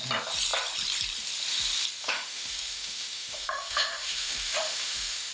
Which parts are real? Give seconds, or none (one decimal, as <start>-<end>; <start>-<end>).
0.0-2.0